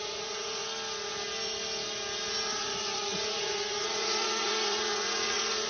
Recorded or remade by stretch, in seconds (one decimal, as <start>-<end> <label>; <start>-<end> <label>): 0.0-0.6 remade; 0.6-2.6 recorded; 2.6-5.7 remade